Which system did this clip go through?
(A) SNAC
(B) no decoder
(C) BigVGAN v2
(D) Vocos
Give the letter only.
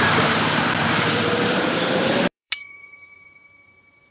C